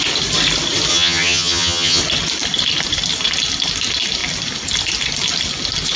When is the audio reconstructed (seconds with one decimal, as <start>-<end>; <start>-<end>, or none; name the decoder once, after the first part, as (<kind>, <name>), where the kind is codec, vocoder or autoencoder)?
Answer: 0.9-2.0 (vocoder, HiFi-GAN)